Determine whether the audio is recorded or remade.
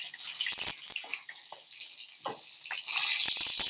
recorded